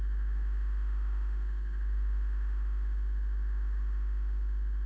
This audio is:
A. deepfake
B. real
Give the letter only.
A